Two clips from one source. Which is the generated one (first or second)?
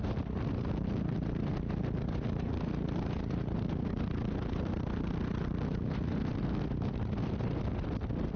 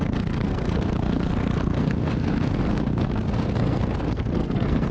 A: second